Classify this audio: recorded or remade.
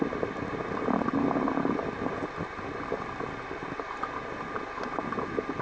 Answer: recorded